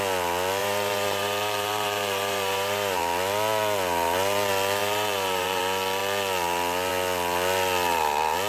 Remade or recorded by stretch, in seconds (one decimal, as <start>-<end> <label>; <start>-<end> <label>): 0.0-0.6 recorded; 0.6-3.0 remade; 3.0-4.8 recorded; 4.8-5.6 remade; 5.6-8.5 recorded